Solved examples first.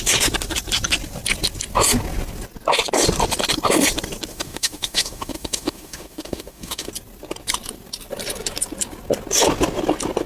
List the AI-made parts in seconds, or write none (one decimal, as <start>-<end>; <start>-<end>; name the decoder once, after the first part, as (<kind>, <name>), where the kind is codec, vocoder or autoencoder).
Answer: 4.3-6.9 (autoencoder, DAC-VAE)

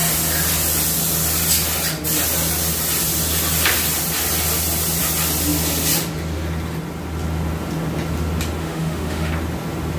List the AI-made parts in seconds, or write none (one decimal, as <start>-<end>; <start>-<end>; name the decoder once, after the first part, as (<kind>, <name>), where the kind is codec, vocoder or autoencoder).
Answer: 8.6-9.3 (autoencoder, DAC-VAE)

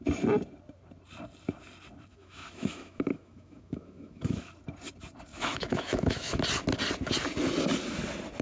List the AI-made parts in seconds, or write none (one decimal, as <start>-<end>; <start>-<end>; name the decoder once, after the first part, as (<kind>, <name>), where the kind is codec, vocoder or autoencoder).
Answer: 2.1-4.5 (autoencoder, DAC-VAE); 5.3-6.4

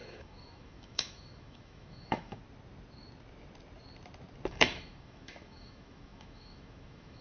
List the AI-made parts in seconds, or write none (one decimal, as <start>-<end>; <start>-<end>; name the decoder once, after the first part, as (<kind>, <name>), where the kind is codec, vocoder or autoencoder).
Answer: 0.0-2.4 (autoencoder, DAC-VAE); 4.5-7.2

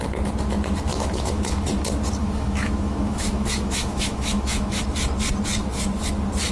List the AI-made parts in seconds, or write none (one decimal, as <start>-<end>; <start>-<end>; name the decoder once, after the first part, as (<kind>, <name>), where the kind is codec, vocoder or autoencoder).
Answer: 0.9-1.7 (autoencoder, DAC-VAE); 2.2-4.8